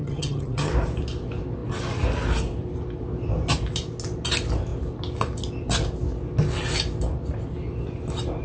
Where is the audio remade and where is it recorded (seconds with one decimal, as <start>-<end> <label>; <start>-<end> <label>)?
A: 0.0-0.7 remade; 0.7-8.4 recorded